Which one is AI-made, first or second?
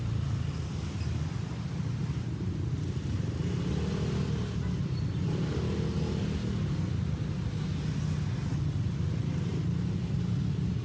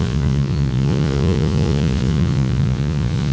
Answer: second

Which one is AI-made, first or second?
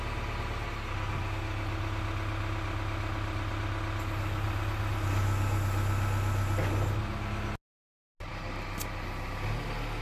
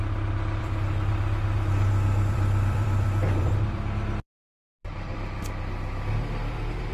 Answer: second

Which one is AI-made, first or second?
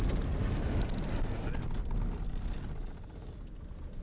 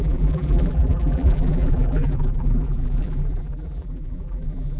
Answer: second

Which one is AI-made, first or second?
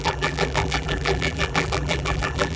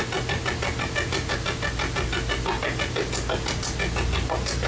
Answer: first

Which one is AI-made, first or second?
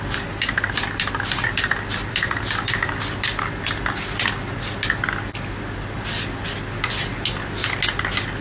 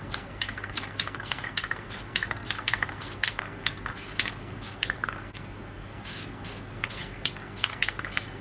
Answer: second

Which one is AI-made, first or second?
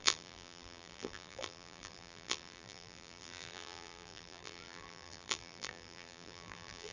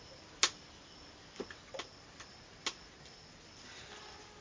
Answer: first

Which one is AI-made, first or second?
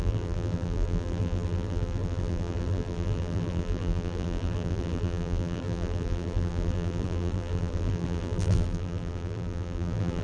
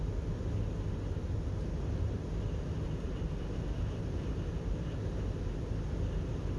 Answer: first